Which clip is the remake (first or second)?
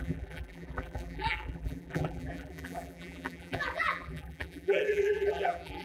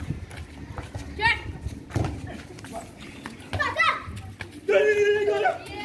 first